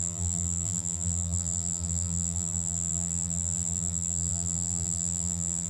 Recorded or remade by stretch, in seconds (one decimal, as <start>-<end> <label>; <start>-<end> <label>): 0.0-5.7 remade